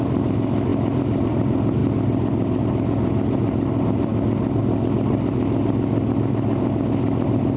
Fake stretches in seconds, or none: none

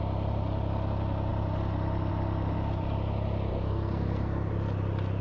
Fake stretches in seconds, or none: 3.5-4.5